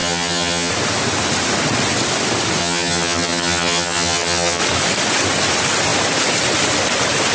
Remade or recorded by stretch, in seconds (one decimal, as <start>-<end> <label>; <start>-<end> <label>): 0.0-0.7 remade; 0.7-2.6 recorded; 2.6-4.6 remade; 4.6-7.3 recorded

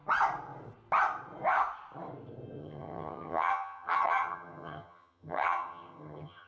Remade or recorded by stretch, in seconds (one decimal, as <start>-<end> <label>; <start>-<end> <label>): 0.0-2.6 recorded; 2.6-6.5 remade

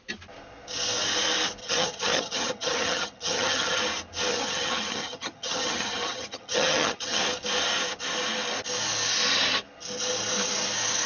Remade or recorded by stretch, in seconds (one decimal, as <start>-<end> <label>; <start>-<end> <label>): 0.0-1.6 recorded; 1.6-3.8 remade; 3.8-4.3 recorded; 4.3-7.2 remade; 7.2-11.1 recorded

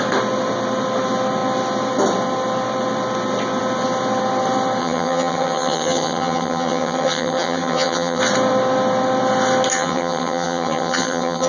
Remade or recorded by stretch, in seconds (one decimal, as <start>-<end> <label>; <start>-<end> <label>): 0.0-4.8 recorded; 4.8-8.2 remade; 8.2-9.7 recorded; 9.7-11.5 remade